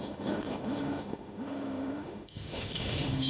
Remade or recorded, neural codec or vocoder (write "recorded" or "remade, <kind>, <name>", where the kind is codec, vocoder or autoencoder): remade, autoencoder, DAC-VAE